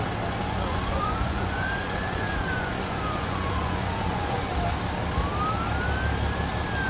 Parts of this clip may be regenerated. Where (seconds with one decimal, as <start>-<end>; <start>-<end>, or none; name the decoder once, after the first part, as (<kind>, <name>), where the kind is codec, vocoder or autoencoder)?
0.4-4.5 (vocoder, Vocos)